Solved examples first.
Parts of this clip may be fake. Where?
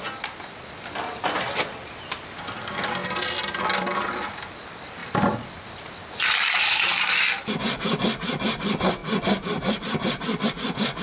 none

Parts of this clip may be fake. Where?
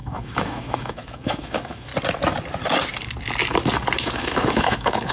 0.0-1.9 (autoencoder, DAC-VAE); 4.0-5.1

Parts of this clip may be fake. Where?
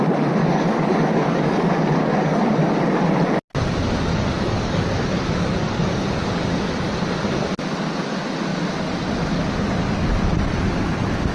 0.4-2.7 (codec, DAC); 4.1-6.4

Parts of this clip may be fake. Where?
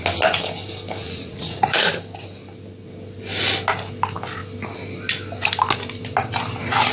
1.0-1.9 (vocoder, Vocos)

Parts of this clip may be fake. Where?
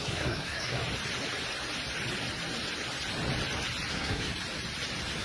0.0-0.8 (codec, SNAC); 3.9-4.3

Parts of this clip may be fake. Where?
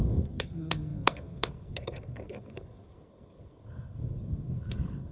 0.0-5.1 (codec, SNAC)